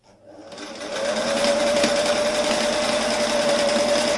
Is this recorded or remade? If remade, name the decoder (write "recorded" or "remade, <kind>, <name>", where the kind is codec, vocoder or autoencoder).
recorded